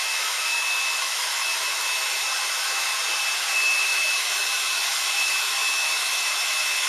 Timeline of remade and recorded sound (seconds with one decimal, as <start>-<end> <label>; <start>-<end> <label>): 0.0-2.9 remade; 2.9-3.5 recorded; 3.5-6.9 remade